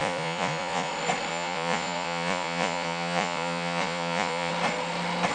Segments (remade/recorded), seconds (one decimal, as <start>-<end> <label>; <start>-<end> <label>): 0.0-0.9 remade; 0.9-1.3 recorded; 1.3-4.5 remade; 4.5-5.3 recorded